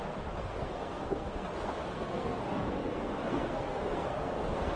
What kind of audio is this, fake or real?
fake